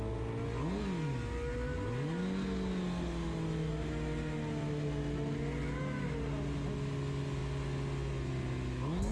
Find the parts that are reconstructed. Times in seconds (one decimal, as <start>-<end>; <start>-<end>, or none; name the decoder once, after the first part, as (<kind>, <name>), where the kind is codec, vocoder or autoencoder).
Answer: none